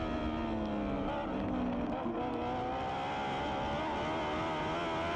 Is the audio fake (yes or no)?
no